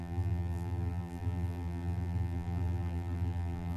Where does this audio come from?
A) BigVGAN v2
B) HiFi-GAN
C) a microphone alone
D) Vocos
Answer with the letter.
A